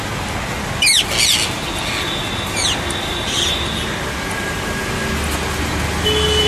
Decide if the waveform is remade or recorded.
recorded